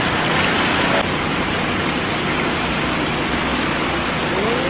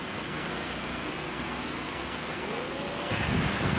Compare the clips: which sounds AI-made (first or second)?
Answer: second